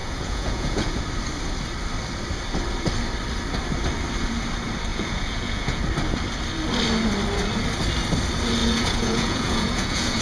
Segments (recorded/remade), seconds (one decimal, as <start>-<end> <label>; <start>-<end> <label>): 0.0-1.0 remade; 1.0-4.9 recorded; 4.9-5.8 remade; 5.8-8.6 recorded; 8.6-10.2 remade